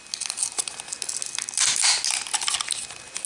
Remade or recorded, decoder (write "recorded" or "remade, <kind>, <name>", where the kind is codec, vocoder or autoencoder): recorded